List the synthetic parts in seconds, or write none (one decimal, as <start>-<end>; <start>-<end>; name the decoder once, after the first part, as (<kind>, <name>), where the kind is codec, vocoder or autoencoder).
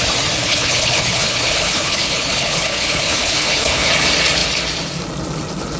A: 0.4-3.9 (codec, HILCodec)